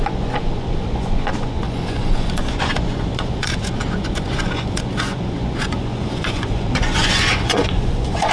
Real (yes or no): no